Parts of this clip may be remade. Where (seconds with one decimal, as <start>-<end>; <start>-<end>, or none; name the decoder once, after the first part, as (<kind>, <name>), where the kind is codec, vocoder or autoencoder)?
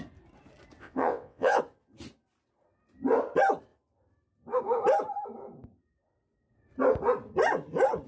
0.8-1.6 (vocoder, WaveNeXt)